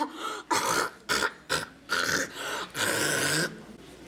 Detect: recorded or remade recorded